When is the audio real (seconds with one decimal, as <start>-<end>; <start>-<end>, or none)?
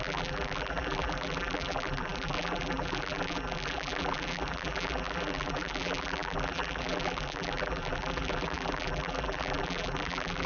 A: none